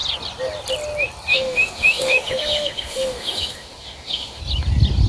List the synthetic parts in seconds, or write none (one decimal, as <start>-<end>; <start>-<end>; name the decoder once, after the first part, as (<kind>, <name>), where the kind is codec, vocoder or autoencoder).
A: 1.3-4.4 (autoencoder, DAC-VAE)